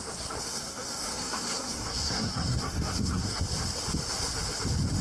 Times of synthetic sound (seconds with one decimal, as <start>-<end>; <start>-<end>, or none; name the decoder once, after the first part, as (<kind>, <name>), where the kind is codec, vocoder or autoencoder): 0.4-3.4 (codec, SNAC)